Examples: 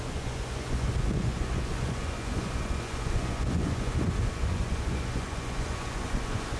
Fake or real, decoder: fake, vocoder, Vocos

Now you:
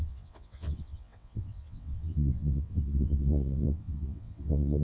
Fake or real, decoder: fake, vocoder, WaveNeXt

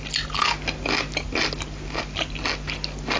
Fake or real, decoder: real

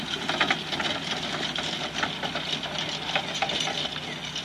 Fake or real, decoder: real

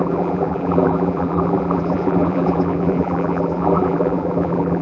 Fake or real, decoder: fake, vocoder, BigVGAN v2